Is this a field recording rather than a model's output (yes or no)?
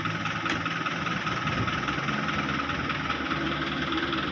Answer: yes